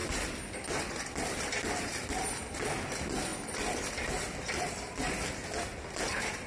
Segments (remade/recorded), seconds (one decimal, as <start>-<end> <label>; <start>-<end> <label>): 0.0-6.5 recorded